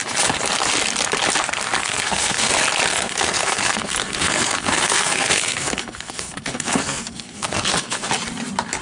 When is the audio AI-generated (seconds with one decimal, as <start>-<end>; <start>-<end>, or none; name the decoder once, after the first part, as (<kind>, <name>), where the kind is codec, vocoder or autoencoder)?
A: 1.8-2.5 (codec, SNAC); 2.9-8.1